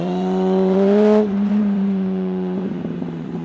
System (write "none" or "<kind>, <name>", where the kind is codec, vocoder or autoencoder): vocoder, Vocos